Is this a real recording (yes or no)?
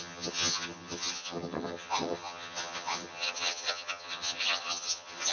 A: no